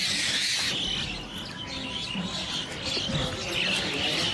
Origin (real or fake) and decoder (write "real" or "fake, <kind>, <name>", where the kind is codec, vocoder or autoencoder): real